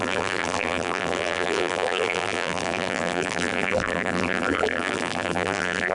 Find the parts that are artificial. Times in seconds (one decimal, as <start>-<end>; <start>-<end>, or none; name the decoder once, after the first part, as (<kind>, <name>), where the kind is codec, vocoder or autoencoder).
0.0-5.9 (vocoder, BigVGAN v2)